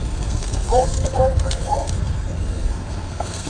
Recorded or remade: remade